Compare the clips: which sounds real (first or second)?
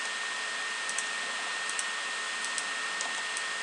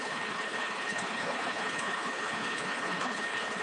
first